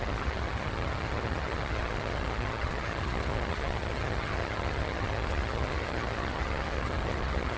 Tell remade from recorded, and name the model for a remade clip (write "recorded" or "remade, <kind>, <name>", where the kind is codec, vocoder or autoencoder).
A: remade, vocoder, HiFi-GAN